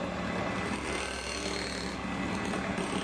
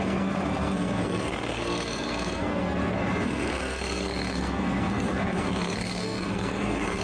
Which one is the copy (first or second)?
second